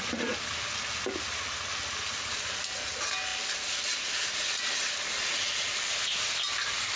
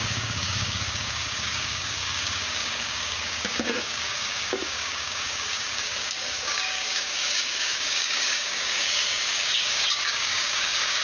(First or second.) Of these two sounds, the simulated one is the second